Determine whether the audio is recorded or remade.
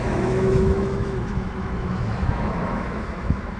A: remade